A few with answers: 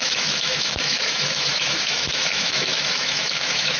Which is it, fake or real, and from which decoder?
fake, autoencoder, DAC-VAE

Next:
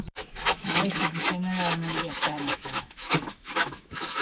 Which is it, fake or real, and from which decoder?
fake, autoencoder, DAC-VAE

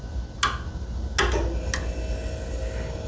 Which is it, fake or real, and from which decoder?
real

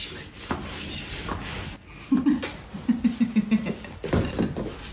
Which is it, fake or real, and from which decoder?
real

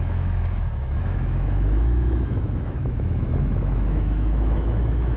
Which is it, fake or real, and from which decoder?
fake, autoencoder, DAC-VAE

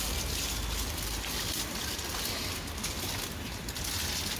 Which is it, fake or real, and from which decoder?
real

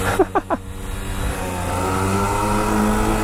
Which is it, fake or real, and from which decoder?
real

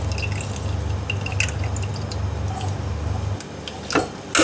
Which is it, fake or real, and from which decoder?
real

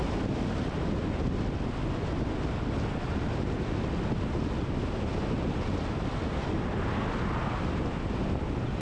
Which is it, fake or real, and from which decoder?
real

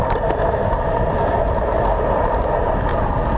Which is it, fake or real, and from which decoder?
real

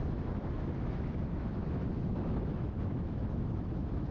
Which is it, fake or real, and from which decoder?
fake, autoencoder, DAC-VAE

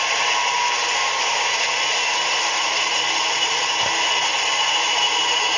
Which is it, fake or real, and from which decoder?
real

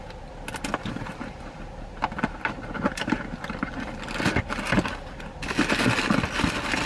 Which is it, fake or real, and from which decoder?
real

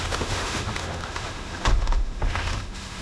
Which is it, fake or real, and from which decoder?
fake, autoencoder, DAC-VAE